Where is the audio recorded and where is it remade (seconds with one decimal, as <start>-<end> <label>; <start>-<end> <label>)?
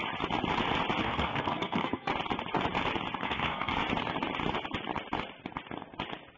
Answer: 0.0-1.0 recorded; 1.0-2.1 remade; 2.1-3.2 recorded; 3.2-3.7 remade; 3.7-6.4 recorded